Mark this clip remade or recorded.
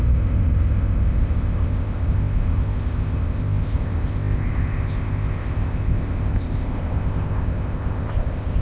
remade